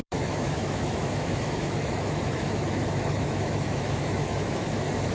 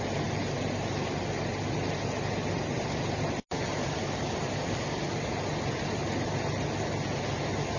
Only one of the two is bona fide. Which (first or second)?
second